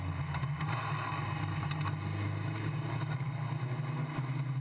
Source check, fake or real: real